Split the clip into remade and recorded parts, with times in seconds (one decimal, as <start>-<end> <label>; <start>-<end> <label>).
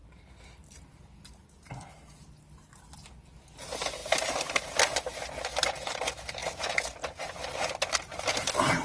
0.0-8.8 recorded